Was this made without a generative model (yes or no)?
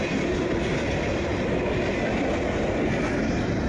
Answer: yes